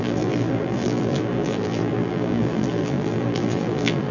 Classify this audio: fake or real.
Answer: fake